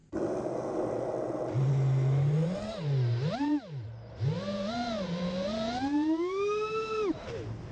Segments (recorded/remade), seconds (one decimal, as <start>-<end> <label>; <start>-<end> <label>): 0.0-7.7 recorded